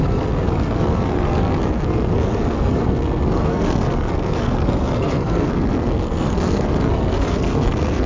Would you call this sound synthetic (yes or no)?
yes